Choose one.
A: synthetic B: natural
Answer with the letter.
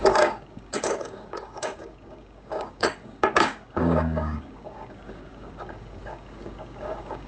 A